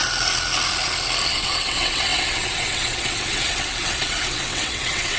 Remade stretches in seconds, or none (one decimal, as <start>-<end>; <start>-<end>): 1.3-5.2